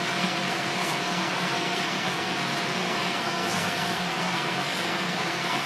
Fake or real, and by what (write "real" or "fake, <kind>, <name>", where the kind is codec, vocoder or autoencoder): fake, codec, SNAC